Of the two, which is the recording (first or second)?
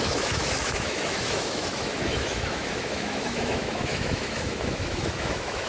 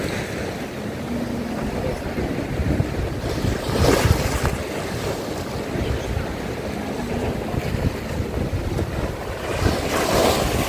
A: second